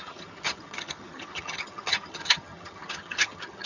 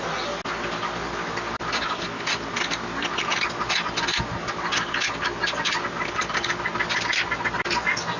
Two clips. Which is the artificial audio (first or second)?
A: first